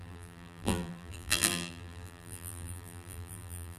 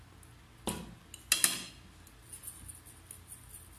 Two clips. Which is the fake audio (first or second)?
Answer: first